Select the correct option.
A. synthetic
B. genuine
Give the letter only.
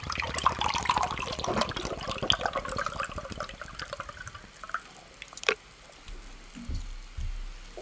B